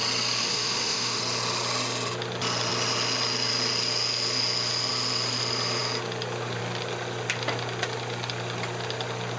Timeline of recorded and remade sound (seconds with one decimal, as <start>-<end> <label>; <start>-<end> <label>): 0.0-0.4 recorded; 0.4-1.2 remade; 1.2-9.4 recorded